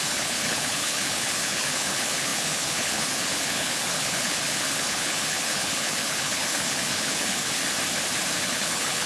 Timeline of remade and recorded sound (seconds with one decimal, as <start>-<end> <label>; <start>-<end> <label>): 0.0-7.6 remade; 7.6-8.3 recorded; 8.3-9.1 remade